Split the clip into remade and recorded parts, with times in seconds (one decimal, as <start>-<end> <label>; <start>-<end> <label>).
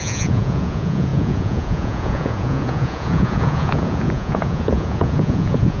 0.0-5.8 remade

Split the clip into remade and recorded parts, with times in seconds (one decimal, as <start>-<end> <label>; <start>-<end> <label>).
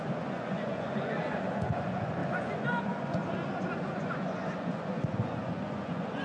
0.0-3.2 remade; 3.2-3.9 recorded; 3.9-6.2 remade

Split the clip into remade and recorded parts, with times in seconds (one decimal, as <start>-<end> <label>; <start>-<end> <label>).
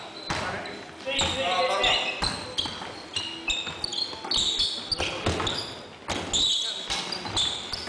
0.0-7.9 recorded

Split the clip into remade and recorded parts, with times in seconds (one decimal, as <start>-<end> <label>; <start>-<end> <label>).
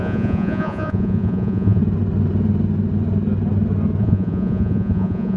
0.0-1.8 remade; 1.8-4.0 recorded; 4.0-5.4 remade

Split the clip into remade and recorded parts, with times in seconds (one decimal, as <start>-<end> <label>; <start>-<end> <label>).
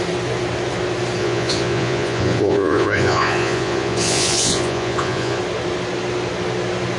0.0-1.2 recorded; 1.2-5.4 remade; 5.4-7.0 recorded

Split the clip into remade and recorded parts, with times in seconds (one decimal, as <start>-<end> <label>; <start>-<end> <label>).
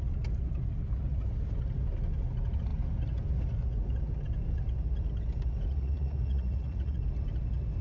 0.0-5.7 recorded; 5.7-7.0 remade; 7.0-7.8 recorded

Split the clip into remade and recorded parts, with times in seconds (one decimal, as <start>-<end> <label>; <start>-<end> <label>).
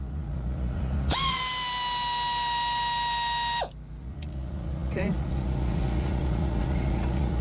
0.0-1.4 remade; 1.4-4.0 recorded; 4.0-7.4 remade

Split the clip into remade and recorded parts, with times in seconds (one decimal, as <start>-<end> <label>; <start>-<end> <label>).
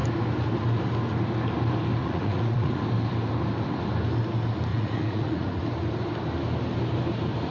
0.0-2.0 recorded; 2.0-2.8 remade; 2.8-4.7 recorded; 4.7-5.6 remade; 5.6-7.5 recorded